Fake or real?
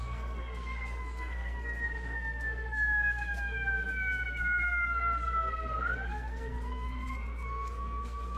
fake